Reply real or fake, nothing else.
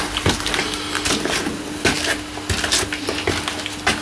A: real